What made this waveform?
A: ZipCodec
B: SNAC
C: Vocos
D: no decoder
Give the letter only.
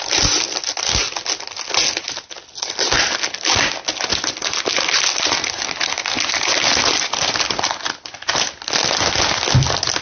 D